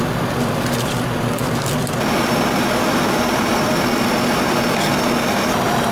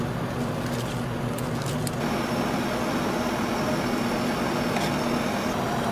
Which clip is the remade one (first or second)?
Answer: first